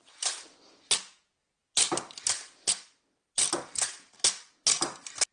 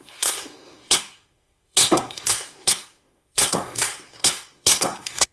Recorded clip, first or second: first